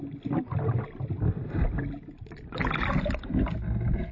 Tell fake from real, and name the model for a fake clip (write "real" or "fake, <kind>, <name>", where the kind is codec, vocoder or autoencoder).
real